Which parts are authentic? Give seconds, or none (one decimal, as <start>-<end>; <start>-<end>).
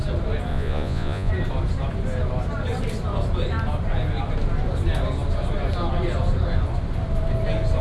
0.0-0.5; 1.3-7.8